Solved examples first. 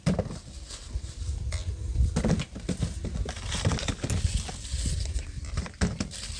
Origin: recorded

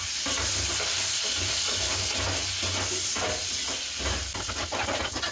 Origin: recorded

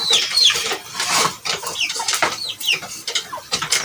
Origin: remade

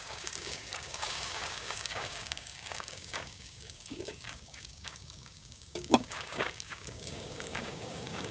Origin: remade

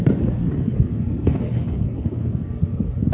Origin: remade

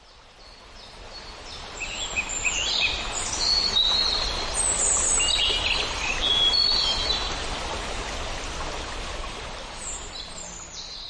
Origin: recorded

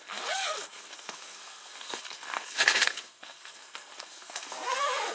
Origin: remade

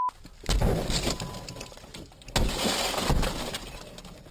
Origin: recorded